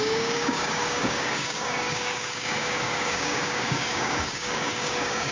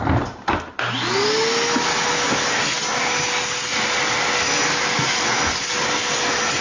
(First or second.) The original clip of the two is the second